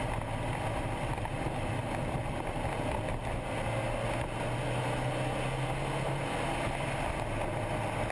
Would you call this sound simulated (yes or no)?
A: no